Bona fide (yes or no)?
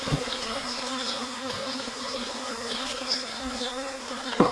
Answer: no